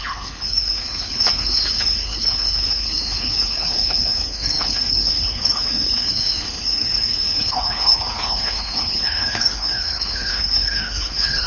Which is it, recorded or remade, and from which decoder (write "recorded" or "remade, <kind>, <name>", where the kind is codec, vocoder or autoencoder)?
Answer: remade, codec, HILCodec